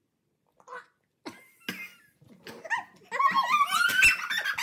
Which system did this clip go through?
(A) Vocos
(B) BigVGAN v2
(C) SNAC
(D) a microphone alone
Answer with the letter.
D